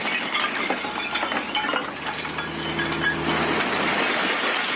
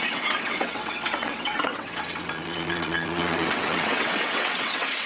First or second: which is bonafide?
first